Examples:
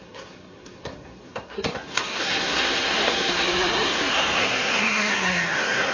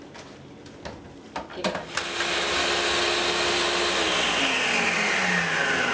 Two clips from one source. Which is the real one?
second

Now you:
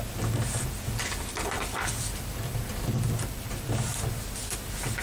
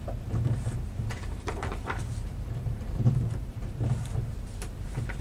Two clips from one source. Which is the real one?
first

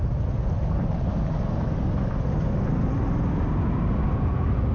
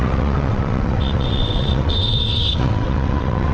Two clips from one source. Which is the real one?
first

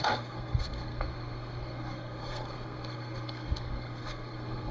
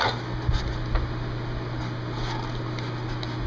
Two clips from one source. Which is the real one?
second